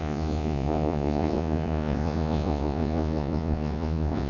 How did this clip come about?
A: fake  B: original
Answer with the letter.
A